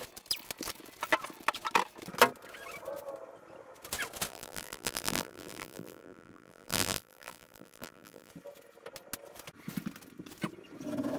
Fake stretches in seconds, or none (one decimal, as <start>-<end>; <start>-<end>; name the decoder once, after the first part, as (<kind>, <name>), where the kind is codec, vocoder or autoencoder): 4.3-8.3 (vocoder, BigVGAN v2)

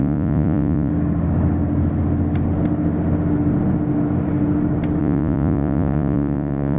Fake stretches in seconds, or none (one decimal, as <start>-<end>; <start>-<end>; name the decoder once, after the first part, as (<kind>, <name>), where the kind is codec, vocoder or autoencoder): 0.0-0.9 (vocoder, Vocos); 5.0-6.8

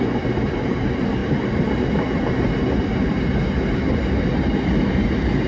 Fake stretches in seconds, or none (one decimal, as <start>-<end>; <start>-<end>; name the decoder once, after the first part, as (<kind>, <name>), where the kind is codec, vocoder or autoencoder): none

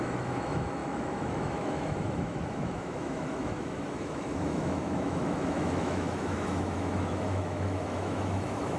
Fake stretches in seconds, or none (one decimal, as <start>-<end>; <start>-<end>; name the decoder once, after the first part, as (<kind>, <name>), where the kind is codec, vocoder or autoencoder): 0.0-8.8 (autoencoder, DAC-VAE)

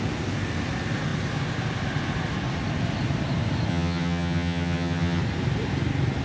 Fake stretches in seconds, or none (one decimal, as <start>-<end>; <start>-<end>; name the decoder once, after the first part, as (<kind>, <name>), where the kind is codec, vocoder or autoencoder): 3.7-5.2 (vocoder, HiFi-GAN)

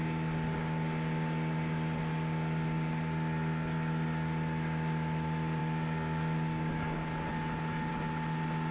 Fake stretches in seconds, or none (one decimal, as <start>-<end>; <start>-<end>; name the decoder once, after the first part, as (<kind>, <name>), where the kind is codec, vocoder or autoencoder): none

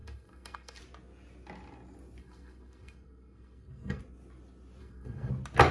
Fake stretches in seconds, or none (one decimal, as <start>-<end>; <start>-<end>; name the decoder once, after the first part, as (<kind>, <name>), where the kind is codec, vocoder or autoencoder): 0.0-0.8 (codec, SNAC); 2.2-4.0; 4.8-5.3